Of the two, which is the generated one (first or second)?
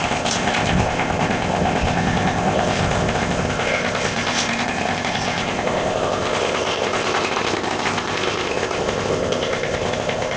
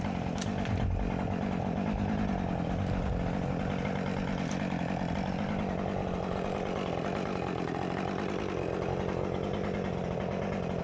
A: first